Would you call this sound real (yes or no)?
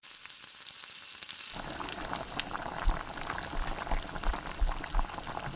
yes